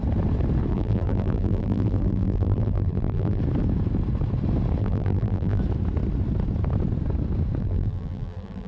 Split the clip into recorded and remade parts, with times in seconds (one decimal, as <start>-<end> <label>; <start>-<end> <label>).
0.0-0.7 recorded; 0.7-3.4 remade; 3.4-4.8 recorded; 4.8-5.6 remade; 5.6-7.6 recorded; 7.6-8.7 remade

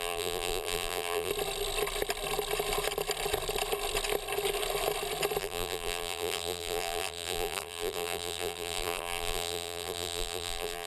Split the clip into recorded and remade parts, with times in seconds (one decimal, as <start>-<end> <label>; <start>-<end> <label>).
0.0-1.3 remade; 1.3-5.4 recorded; 5.4-10.9 remade

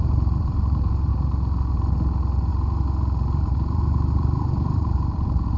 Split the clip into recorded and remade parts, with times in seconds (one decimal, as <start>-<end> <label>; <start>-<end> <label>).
0.0-1.1 remade; 1.1-2.5 recorded; 2.5-5.6 remade

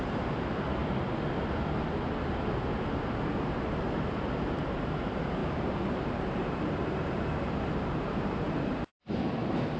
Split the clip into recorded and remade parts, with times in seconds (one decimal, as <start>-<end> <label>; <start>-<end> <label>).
0.0-0.8 remade; 0.8-3.3 recorded; 3.3-9.8 remade

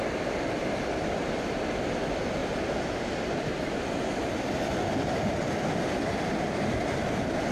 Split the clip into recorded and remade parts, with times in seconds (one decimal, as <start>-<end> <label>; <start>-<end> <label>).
0.0-2.4 remade; 2.4-4.4 recorded; 4.4-7.5 remade

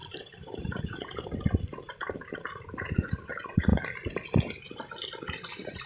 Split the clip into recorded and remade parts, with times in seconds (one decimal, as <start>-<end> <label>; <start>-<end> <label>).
0.0-3.7 remade; 3.7-5.5 recorded; 5.5-5.9 remade

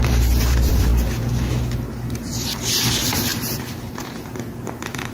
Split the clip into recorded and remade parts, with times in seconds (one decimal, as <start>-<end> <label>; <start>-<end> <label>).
0.0-5.1 remade

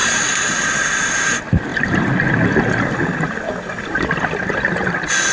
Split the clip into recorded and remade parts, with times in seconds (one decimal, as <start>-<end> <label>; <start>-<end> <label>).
0.0-5.3 recorded